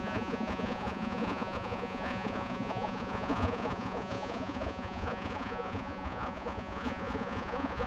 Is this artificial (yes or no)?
yes